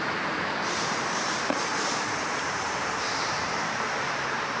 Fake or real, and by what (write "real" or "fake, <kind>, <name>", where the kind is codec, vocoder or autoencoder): fake, vocoder, BigVGAN v2